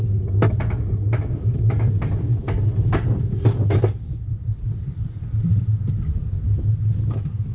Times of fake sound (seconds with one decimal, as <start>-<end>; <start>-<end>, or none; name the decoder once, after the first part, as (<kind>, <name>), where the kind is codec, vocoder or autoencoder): none